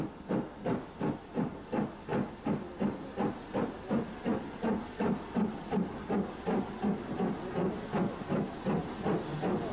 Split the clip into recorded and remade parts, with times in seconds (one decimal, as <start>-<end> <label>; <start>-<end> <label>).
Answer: 0.0-9.7 recorded